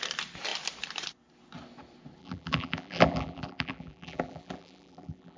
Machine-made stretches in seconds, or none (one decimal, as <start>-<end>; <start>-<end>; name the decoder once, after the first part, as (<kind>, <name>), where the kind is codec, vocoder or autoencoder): 2.2-5.4 (vocoder, BigVGAN v2)